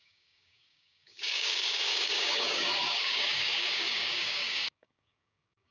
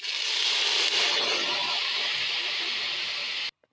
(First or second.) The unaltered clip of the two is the second